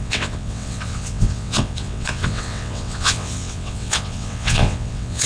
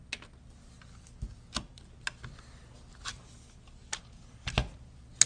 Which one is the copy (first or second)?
first